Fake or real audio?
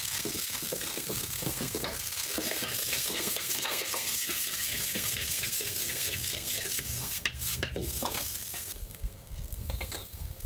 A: fake